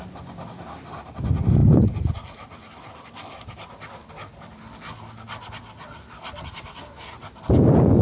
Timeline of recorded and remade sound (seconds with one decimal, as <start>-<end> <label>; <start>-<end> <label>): 0.0-8.0 recorded